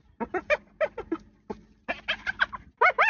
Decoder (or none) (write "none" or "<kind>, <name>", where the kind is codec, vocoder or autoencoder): none